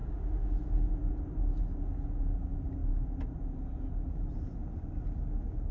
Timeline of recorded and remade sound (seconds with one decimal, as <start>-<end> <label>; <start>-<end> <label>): 0.0-5.7 recorded